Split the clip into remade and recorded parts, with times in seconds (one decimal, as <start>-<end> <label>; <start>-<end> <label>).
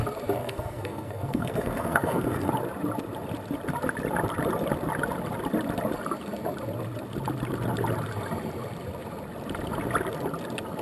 0.0-0.4 recorded; 0.4-2.5 remade; 2.5-10.8 recorded